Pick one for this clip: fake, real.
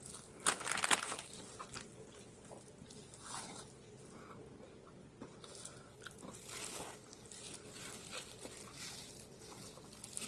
real